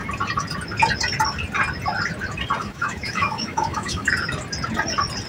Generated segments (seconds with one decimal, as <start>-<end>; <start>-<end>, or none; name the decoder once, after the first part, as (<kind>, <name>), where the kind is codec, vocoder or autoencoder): 2.6-4.1 (autoencoder, DAC-VAE)